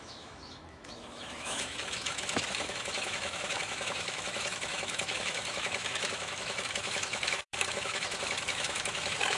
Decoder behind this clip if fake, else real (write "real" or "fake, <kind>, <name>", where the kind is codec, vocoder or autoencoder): fake, autoencoder, DAC-VAE